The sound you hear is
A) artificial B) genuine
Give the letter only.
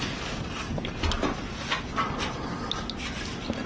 B